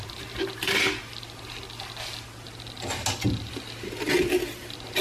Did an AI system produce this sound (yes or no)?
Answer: no